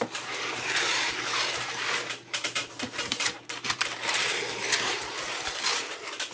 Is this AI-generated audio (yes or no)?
yes